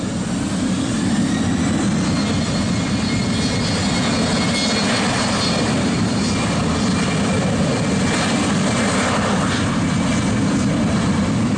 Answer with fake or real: real